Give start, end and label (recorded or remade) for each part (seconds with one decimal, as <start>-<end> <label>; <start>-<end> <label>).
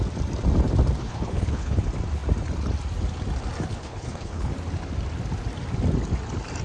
0.0-1.0 recorded; 1.0-1.8 remade; 1.8-3.7 recorded; 3.7-4.5 remade; 4.5-6.6 recorded